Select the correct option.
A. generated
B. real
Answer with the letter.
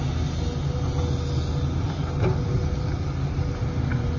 B